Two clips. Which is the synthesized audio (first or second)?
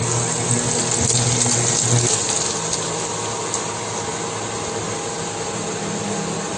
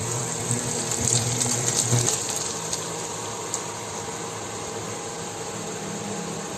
second